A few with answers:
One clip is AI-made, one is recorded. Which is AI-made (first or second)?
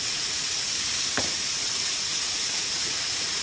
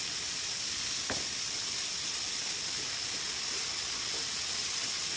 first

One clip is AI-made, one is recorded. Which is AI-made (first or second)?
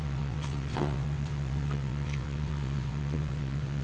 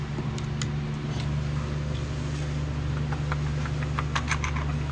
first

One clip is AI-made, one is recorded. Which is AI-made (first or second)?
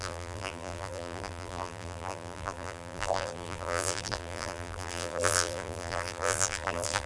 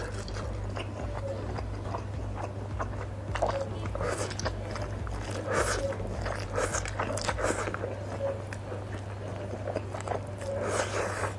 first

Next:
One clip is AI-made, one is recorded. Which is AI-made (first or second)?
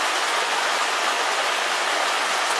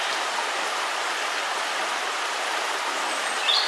first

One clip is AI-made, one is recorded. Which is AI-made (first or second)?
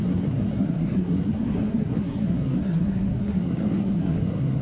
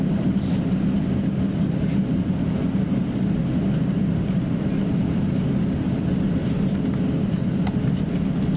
first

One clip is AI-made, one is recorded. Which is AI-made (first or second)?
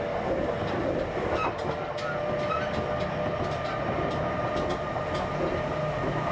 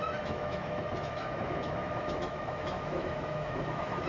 second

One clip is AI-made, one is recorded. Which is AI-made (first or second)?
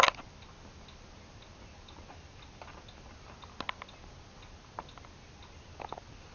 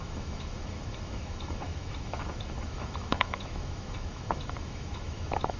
second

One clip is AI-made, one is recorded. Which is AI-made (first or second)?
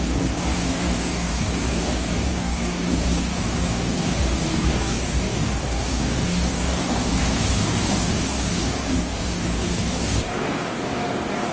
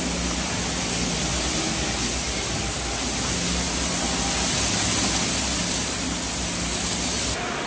first